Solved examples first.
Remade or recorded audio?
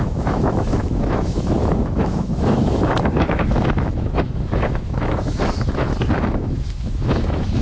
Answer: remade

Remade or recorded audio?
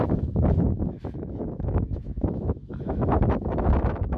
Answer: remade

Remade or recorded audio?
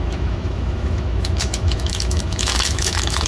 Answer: remade